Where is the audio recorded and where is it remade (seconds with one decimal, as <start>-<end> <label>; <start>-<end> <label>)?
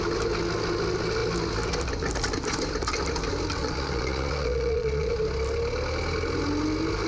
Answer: 0.0-3.6 recorded; 3.6-5.1 remade; 5.1-7.1 recorded